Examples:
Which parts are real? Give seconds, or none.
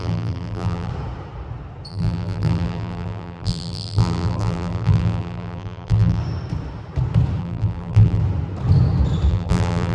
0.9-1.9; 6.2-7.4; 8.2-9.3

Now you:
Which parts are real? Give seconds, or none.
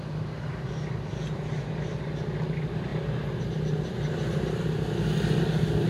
0.0-5.9